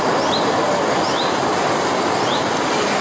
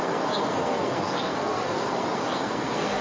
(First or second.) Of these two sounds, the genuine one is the first